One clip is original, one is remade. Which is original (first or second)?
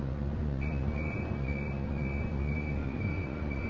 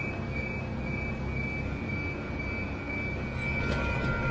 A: second